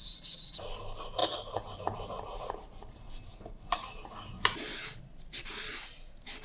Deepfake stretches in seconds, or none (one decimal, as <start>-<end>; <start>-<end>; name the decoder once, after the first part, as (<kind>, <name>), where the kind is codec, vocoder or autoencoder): 0.0-0.6 (vocoder, BigVGAN v2); 1.2-5.0